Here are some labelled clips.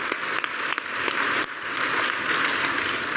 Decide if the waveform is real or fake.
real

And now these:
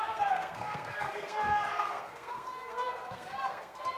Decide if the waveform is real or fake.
fake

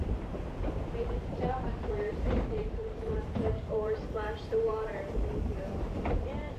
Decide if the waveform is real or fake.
fake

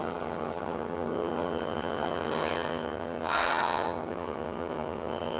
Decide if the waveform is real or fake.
fake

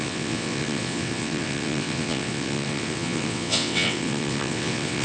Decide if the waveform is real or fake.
fake